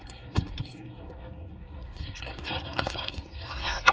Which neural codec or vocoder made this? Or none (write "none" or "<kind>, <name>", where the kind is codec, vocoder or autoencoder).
codec, SNAC